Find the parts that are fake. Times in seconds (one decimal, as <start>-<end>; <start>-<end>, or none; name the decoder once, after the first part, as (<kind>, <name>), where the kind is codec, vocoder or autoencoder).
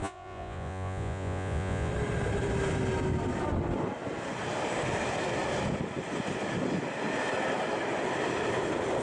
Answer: 0.0-1.9 (vocoder, Vocos)